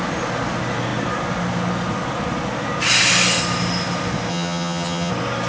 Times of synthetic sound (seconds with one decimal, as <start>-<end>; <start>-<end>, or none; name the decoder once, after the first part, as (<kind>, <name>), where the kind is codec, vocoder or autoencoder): 4.3-5.1 (vocoder, HiFi-GAN)